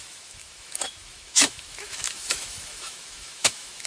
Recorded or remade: remade